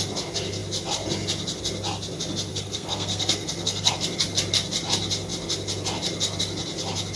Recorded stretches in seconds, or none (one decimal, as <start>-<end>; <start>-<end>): 0.0-2.5; 3.9-7.2